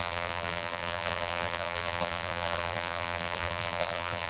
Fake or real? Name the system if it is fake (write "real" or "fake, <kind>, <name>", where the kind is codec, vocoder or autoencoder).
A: fake, vocoder, BigVGAN v2